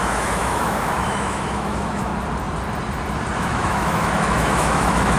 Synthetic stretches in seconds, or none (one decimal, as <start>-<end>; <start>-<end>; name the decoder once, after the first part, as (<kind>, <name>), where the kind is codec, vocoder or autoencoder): 0.0-2.1 (autoencoder, DAC-VAE); 3.4-5.2